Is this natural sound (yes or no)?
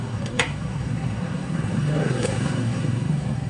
no